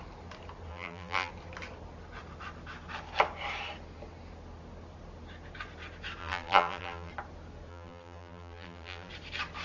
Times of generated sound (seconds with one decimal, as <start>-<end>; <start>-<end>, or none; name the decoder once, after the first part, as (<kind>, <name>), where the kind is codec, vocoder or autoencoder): 0.7-1.3 (vocoder, BigVGAN v2); 6.2-7.1; 7.7-9.1